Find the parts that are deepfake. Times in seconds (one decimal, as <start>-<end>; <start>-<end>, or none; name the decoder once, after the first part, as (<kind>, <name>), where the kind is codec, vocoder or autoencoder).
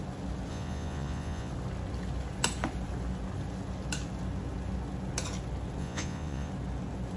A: 0.5-1.5 (vocoder, Vocos); 5.8-6.5